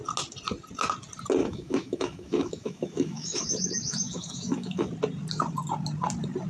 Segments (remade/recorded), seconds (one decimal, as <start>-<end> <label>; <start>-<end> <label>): 0.0-1.4 recorded; 1.4-4.9 remade; 4.9-6.5 recorded